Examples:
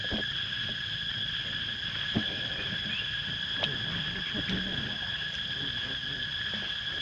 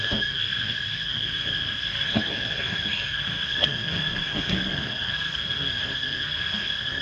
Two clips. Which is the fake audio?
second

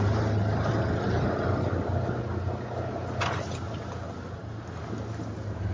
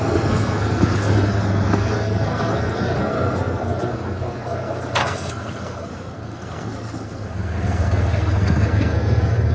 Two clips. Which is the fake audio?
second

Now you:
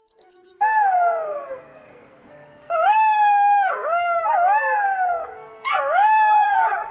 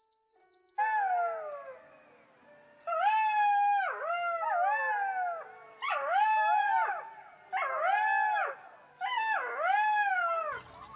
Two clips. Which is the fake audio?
first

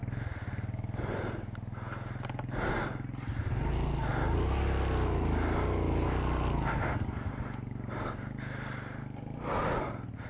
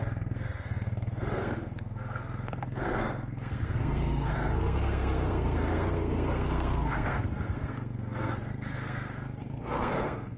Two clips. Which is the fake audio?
second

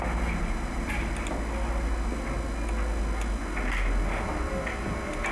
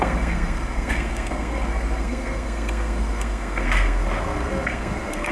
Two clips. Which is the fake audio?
second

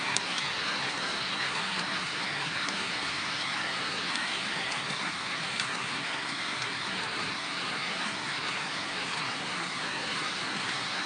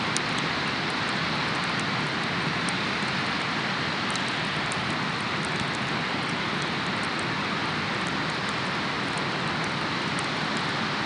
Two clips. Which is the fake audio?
first